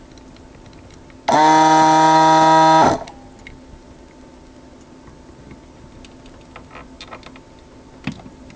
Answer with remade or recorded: recorded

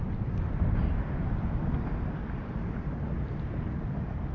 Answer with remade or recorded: recorded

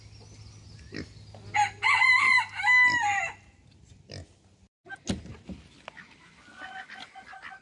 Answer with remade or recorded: recorded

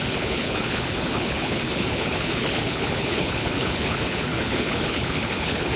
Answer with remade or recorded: remade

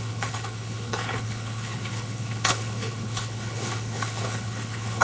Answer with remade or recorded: remade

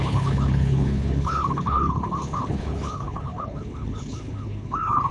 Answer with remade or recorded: remade